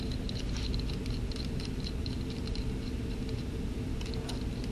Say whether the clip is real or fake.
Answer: real